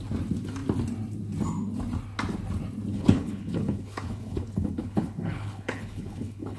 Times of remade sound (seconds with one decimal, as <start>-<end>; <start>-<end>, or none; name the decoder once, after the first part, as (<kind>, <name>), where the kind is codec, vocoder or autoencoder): 2.9-6.6 (codec, HILCodec)